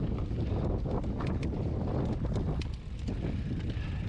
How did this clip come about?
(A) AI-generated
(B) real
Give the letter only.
B